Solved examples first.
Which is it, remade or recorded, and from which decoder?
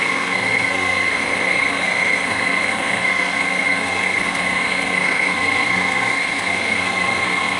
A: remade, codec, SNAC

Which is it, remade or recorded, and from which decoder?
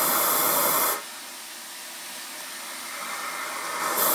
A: recorded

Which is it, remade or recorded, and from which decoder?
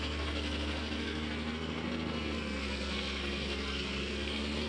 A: remade, codec, SNAC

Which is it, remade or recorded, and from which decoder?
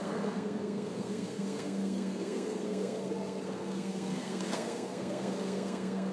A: remade, codec, SNAC